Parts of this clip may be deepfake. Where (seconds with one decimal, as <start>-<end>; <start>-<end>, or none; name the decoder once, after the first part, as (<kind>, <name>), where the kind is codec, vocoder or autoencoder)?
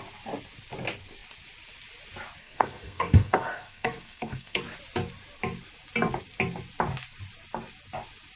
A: 2.4-4.6 (codec, SNAC)